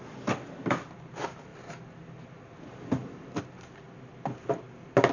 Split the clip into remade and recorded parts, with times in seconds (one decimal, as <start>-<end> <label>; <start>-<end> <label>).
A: 0.0-5.1 recorded